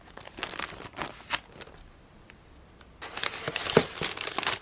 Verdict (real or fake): real